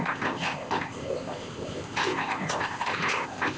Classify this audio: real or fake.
fake